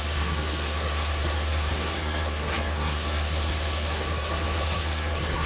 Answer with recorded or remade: remade